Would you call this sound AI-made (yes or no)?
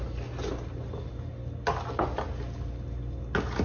no